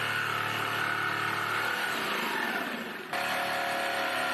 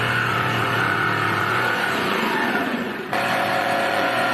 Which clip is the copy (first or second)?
second